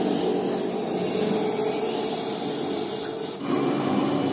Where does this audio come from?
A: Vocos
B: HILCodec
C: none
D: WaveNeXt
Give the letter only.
C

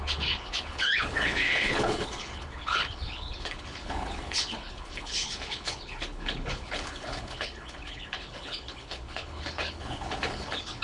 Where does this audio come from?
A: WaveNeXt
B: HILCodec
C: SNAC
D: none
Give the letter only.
B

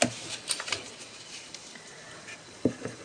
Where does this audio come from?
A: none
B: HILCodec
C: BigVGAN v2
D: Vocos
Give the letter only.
A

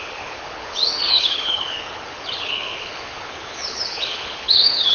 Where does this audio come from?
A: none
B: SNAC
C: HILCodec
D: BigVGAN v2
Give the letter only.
C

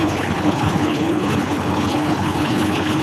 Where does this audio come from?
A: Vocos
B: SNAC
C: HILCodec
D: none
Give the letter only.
C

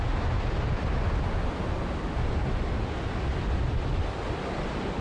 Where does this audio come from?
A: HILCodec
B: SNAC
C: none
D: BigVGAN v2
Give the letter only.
C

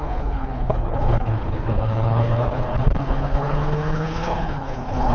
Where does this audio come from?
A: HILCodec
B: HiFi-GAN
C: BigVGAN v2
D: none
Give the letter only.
A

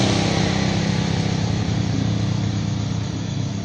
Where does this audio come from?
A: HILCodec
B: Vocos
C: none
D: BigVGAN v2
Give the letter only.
C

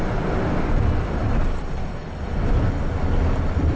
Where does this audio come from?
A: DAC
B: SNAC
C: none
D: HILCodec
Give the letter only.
C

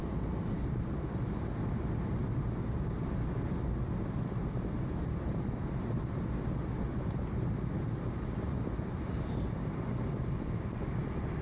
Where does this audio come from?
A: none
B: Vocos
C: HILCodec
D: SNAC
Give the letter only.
A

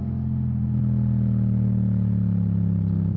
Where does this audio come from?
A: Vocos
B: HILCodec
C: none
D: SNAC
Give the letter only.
C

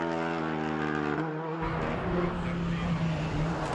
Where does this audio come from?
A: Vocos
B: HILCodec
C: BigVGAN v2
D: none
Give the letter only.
D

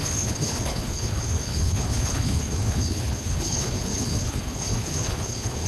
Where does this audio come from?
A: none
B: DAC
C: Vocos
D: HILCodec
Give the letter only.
D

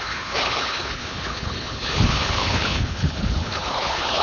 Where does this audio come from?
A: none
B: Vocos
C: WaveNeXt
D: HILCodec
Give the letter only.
D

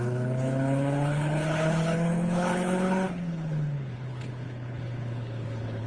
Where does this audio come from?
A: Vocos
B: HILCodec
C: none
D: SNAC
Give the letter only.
B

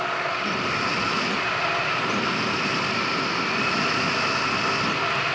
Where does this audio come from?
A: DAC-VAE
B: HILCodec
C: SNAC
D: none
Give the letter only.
D